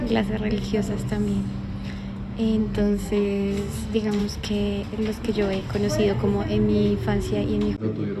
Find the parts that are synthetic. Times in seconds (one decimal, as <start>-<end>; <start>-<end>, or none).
2.6-4.2